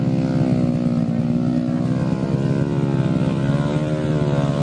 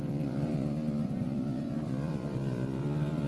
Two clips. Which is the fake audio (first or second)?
second